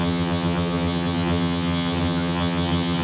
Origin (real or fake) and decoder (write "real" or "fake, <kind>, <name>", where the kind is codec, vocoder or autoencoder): fake, vocoder, HiFi-GAN